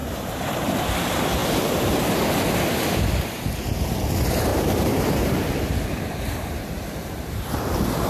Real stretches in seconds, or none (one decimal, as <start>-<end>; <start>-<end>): 0.7-4.5

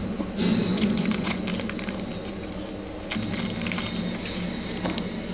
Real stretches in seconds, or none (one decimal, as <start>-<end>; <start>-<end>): 0.0-0.7; 1.4-5.3

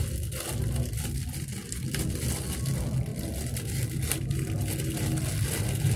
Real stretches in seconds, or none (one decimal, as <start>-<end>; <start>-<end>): 0.0-6.0

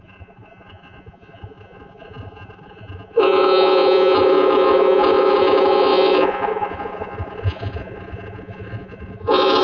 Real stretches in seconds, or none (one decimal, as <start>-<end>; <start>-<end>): none

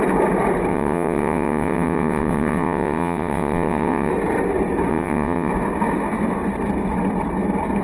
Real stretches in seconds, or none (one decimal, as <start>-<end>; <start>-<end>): 0.0-0.7; 4.1-4.9; 5.5-7.8